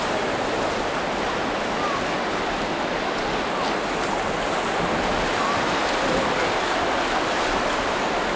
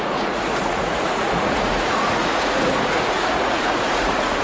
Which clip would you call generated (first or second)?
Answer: second